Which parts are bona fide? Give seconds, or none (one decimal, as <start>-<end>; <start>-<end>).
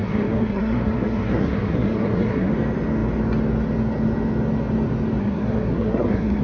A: 2.5-5.2